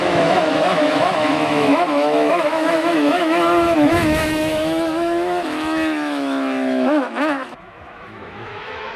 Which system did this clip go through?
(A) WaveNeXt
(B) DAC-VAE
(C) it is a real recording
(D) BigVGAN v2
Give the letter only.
B